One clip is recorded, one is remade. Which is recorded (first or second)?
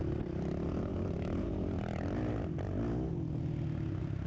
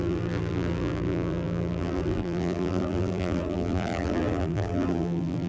first